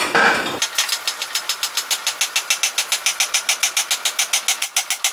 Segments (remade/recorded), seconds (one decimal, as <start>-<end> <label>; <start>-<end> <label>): 0.0-5.1 recorded